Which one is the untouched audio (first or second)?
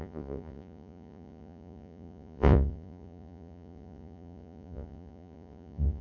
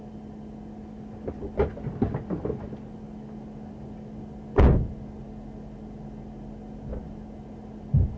second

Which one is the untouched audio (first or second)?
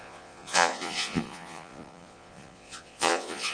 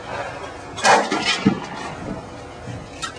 second